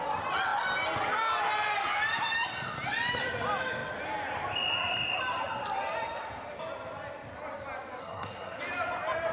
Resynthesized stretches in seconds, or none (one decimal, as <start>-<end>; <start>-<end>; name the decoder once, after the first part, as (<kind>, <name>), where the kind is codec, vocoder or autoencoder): 8.0-8.6 (codec, SNAC)